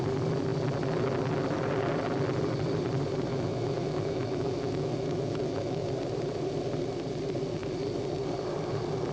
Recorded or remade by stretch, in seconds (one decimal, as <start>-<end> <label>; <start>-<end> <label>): 0.0-3.3 recorded; 3.3-5.9 remade; 5.9-9.1 recorded

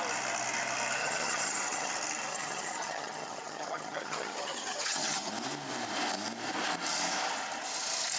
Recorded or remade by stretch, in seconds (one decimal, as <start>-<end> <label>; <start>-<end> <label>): 0.0-1.0 recorded; 1.0-1.9 remade; 1.9-2.3 recorded; 2.3-5.3 remade; 5.3-8.2 recorded

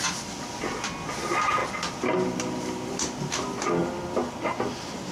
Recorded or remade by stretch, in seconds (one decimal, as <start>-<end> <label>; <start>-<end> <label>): 0.0-5.1 recorded